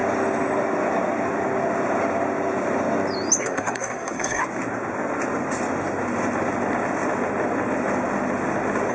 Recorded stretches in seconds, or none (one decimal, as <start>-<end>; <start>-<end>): 0.0-3.4; 4.4-8.9